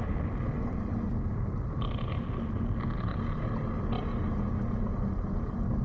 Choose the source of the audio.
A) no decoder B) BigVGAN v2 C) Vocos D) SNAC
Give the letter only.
A